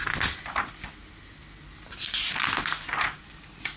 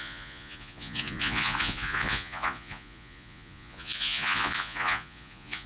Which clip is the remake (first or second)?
second